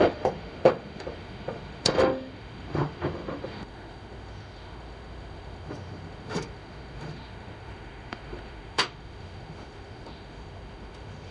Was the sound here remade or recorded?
remade